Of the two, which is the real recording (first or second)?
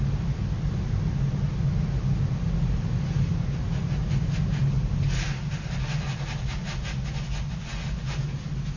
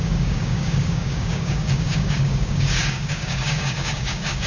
first